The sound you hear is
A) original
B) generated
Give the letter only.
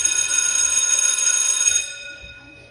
B